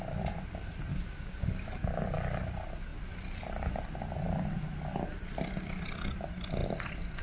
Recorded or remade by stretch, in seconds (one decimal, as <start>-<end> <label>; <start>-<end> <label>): 0.0-0.9 recorded; 0.9-1.5 remade; 1.5-7.2 recorded